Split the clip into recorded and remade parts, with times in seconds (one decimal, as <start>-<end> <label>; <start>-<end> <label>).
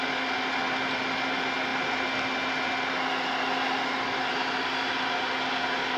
0.0-6.0 recorded